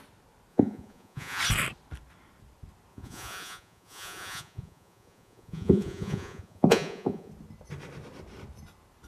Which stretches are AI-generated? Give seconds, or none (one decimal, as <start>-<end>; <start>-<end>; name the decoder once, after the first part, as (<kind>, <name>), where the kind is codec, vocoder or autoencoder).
0.5-1.4 (vocoder, Vocos); 2.9-7.3